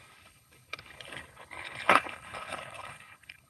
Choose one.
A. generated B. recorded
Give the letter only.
A